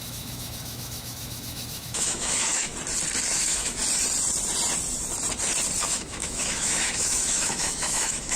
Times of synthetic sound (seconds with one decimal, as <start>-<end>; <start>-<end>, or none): 0.0-2.7; 3.3-3.8; 5.8-8.4